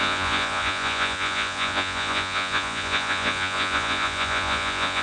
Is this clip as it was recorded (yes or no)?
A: no